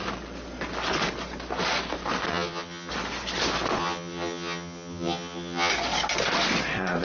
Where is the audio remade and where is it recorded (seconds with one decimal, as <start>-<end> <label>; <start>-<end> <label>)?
0.0-2.3 recorded; 2.3-2.9 remade; 2.9-3.8 recorded; 3.8-5.7 remade; 5.7-7.0 recorded